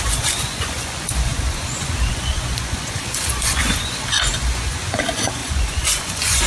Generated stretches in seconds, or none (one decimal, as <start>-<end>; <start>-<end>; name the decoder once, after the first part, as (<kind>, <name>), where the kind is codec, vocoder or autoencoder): 0.0-6.5 (vocoder, Vocos)